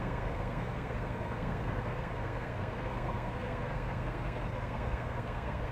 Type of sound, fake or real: fake